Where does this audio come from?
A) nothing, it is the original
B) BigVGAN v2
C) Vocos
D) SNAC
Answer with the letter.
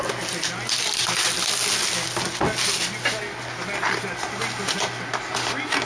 A